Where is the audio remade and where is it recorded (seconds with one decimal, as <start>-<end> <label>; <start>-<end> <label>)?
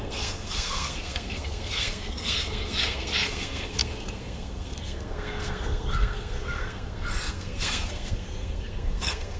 0.0-9.4 remade